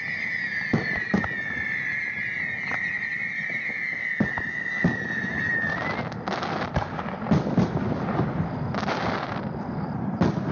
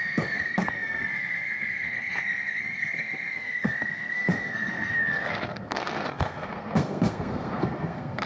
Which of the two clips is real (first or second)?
first